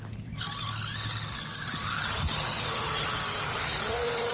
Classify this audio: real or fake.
real